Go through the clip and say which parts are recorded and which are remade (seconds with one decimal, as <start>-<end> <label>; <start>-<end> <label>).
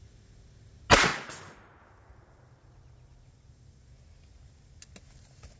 0.0-5.6 recorded